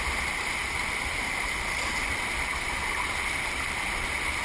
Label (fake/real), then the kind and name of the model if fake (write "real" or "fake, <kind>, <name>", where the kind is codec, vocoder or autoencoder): real